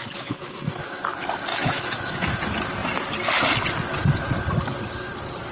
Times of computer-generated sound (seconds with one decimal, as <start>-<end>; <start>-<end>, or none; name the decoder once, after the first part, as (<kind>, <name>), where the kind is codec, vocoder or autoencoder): 0.0-1.0 (autoencoder, DAC-VAE); 1.5-2.3